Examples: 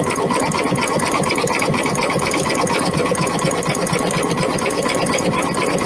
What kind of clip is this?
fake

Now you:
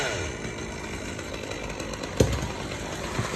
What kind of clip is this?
real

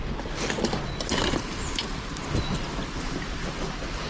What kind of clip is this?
real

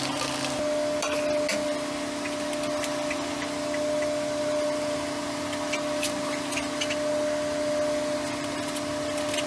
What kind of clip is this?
real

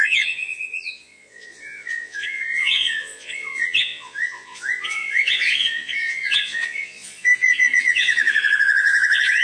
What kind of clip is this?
fake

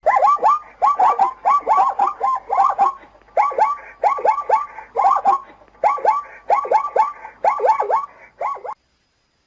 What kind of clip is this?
real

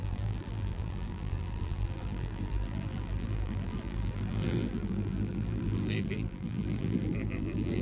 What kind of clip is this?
fake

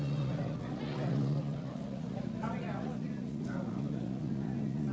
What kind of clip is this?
fake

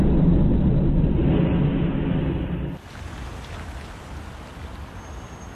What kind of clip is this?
real